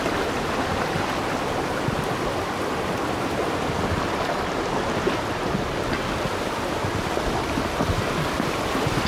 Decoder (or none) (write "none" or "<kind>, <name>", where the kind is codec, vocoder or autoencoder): none